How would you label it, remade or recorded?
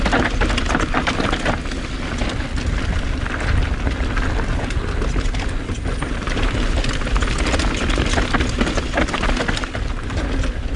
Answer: recorded